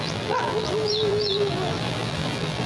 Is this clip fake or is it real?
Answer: fake